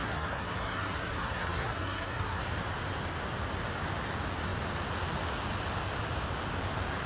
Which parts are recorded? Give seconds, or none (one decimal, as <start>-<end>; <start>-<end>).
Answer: 2.4-7.1